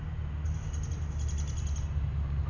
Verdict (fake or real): real